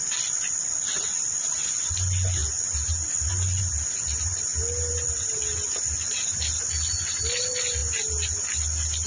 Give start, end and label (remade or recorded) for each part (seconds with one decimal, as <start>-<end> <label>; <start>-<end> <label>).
0.0-9.1 recorded